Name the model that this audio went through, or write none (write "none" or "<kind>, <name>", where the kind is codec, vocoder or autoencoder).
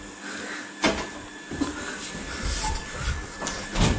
none